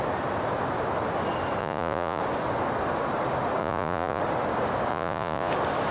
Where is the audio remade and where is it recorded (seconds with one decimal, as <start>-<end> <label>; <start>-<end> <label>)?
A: 0.0-1.6 recorded; 1.6-2.2 remade; 2.2-3.6 recorded; 3.6-4.2 remade; 4.2-4.9 recorded; 4.9-5.5 remade; 5.5-5.9 recorded